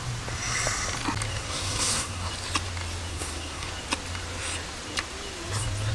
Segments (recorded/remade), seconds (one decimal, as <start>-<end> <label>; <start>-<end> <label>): 0.0-1.3 recorded; 1.3-2.3 remade; 2.3-3.1 recorded; 3.1-3.7 remade; 3.7-5.9 recorded